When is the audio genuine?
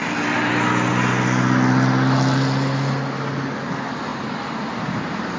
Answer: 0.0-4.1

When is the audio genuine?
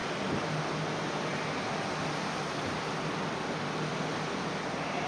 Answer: 0.6-5.1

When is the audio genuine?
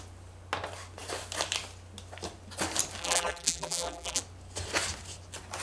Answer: 0.0-3.0; 4.2-5.6